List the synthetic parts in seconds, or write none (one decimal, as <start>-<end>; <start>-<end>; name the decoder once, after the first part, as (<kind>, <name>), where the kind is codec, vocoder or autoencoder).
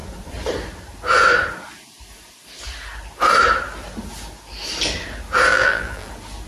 5.5-6.1 (vocoder, BigVGAN v2)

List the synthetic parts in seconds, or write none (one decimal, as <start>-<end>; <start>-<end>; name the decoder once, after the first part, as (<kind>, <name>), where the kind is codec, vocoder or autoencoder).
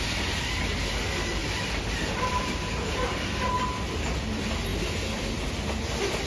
1.4-2.7 (vocoder, BigVGAN v2)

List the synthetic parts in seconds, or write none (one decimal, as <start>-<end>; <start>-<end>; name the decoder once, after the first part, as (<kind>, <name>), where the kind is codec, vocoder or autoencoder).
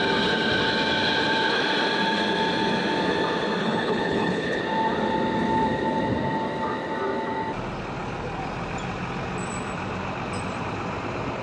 3.6-4.6 (codec, HILCodec)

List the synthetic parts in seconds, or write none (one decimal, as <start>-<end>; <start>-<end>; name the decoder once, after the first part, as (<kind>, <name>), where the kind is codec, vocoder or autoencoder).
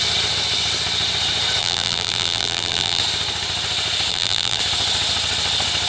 1.6-3.0 (vocoder, BigVGAN v2); 4.1-4.6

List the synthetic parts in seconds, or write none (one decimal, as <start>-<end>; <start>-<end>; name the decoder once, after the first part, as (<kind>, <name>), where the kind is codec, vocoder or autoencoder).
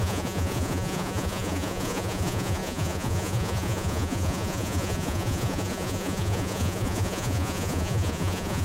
0.0-8.6 (vocoder, Vocos)